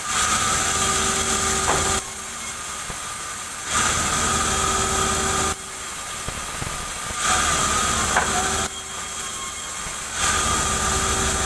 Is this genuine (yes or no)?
yes